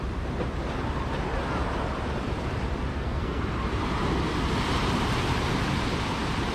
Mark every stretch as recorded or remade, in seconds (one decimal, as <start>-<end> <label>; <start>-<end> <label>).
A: 0.0-2.9 recorded; 2.9-3.4 remade; 3.4-6.5 recorded